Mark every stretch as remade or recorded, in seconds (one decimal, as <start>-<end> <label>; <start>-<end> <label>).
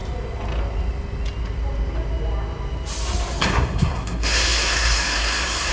0.0-3.4 recorded; 3.4-5.7 remade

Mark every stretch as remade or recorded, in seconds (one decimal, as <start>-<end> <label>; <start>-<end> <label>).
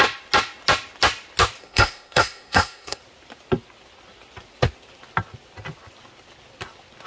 0.0-1.6 recorded; 1.6-3.0 remade; 3.0-7.1 recorded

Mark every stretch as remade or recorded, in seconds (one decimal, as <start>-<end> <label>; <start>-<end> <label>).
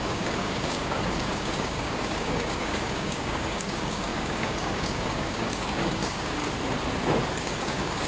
0.0-6.4 remade; 6.4-7.4 recorded; 7.4-8.1 remade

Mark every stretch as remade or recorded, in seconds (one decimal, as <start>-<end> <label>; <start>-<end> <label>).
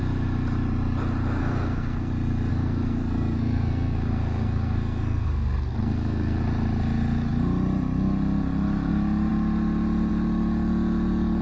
0.0-1.4 recorded; 1.4-2.1 remade; 2.1-2.5 recorded; 2.5-6.4 remade; 6.4-11.4 recorded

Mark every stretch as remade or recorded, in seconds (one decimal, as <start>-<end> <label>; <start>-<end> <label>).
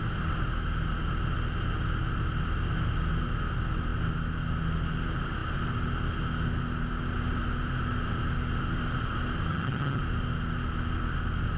0.0-9.5 recorded; 9.5-10.0 remade; 10.0-11.6 recorded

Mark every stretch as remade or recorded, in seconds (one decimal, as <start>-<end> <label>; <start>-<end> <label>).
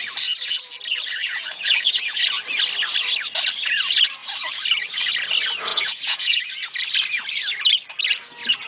0.0-1.2 recorded; 1.2-2.2 remade; 2.2-5.7 recorded; 5.7-6.5 remade; 6.5-8.7 recorded